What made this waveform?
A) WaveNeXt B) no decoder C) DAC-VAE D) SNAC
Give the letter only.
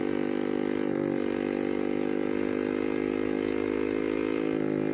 B